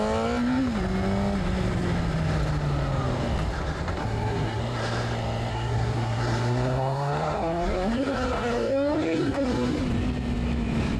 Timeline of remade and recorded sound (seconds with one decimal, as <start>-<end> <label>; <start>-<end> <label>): 0.0-4.0 recorded; 4.0-4.6 remade; 4.6-5.5 recorded; 5.5-9.8 remade; 9.8-11.0 recorded